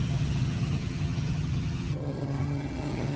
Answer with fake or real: fake